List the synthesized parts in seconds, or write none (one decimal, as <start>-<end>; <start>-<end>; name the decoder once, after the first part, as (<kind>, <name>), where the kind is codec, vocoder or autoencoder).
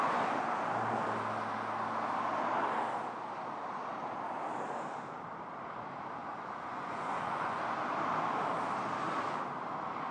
6.2-7.6 (vocoder, Vocos)